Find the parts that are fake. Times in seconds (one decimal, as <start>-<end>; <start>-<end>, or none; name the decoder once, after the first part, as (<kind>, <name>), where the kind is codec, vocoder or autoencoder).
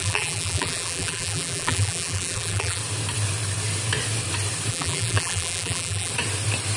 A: 0.0-2.8 (vocoder, BigVGAN v2); 4.7-6.1